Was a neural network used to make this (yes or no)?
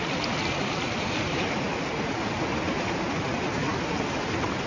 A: no